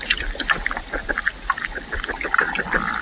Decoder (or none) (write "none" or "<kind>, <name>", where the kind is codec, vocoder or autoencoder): vocoder, BigVGAN v2